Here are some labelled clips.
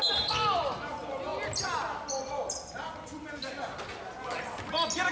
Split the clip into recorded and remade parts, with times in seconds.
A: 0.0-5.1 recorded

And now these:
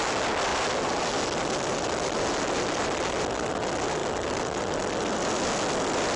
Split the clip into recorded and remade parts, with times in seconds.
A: 0.0-6.2 recorded